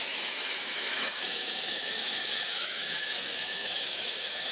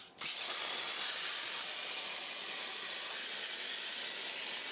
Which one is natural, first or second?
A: second